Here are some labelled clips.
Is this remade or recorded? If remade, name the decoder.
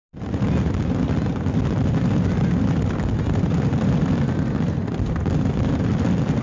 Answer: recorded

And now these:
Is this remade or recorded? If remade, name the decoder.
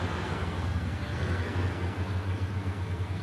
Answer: remade, codec, SNAC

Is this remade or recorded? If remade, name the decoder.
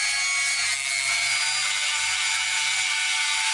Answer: recorded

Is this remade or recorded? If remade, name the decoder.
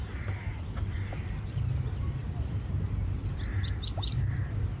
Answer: recorded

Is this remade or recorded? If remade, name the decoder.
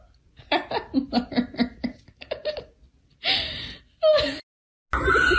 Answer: recorded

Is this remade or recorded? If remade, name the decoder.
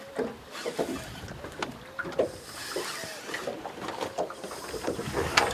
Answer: recorded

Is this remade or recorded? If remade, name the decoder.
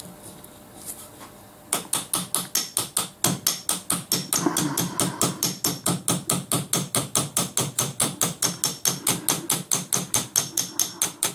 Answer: recorded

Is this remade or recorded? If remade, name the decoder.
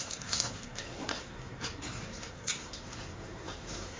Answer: remade, codec, SNAC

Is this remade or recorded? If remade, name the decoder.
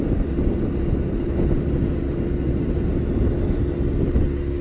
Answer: recorded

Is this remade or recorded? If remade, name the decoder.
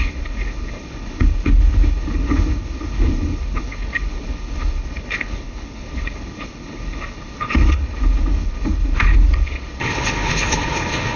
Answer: remade, codec, HILCodec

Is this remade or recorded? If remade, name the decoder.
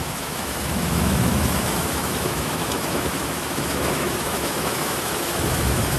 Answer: remade, autoencoder, DAC-VAE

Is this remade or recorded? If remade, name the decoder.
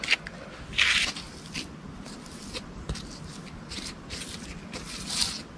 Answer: recorded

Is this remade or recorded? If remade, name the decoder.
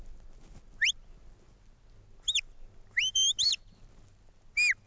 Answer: recorded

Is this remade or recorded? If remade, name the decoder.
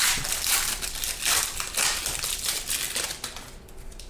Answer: recorded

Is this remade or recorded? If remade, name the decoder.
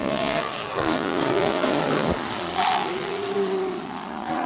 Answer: remade, vocoder, Vocos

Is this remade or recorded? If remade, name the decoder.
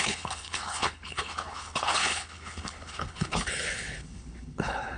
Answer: remade, codec, HILCodec